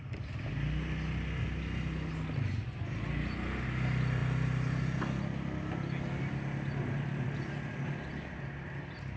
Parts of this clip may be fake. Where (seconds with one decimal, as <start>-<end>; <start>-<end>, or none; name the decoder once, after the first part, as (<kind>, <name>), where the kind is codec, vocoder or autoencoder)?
none